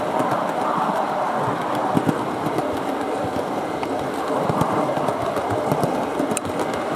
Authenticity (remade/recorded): recorded